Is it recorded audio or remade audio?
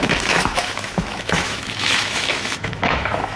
remade